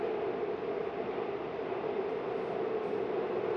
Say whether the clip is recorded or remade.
recorded